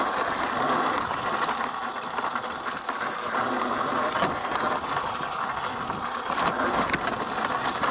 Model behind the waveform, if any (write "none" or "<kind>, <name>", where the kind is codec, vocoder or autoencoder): none